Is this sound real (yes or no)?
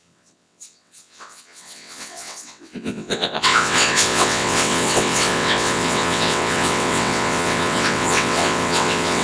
no